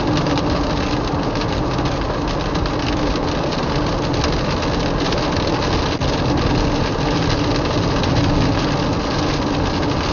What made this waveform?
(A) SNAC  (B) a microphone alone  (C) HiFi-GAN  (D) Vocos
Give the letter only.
B